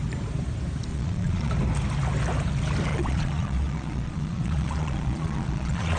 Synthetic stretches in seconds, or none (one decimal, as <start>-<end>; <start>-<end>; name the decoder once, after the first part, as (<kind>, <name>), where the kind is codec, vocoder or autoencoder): 0.9-1.5 (vocoder, Vocos); 2.9-6.0